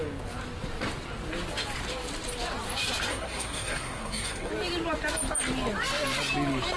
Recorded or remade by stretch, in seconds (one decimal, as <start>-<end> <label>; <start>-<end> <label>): 0.0-3.1 recorded; 3.1-4.5 remade; 4.5-6.8 recorded